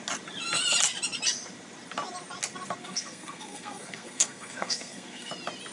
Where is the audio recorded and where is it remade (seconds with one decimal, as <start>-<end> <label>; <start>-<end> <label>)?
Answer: 0.0-2.8 recorded; 2.8-5.3 remade; 5.3-5.7 recorded